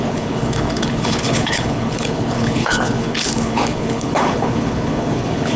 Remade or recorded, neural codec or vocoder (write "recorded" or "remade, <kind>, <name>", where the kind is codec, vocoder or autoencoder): remade, codec, HILCodec